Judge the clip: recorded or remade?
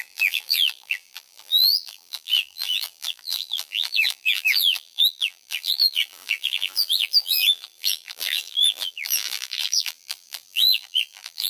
remade